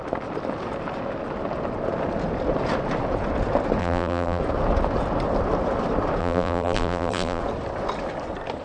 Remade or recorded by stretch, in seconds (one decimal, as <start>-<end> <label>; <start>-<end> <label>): 0.0-3.8 recorded; 3.8-4.4 remade; 4.4-6.2 recorded; 6.2-7.4 remade; 7.4-8.6 recorded